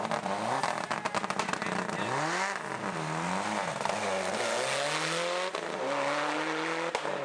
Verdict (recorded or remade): recorded